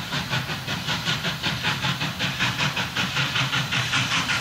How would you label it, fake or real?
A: real